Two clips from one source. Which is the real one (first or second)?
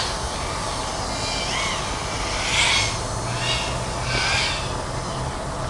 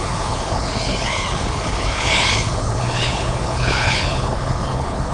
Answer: first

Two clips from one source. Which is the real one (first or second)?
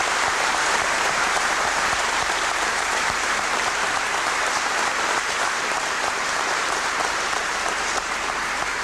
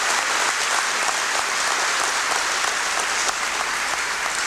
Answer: second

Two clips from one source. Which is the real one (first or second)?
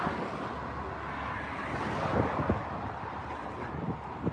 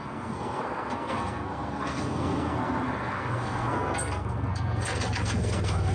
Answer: first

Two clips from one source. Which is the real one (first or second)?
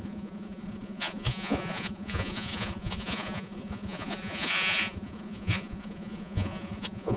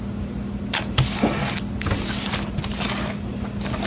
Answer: second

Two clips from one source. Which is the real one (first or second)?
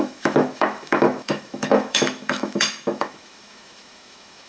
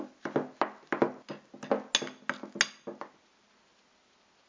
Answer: second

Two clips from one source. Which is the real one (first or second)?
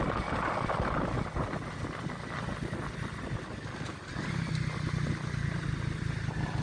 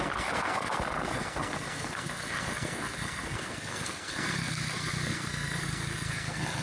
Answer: first